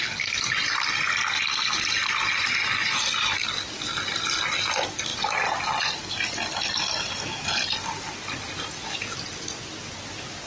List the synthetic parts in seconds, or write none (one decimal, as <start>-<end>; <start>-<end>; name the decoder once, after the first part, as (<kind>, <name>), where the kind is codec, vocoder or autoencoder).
none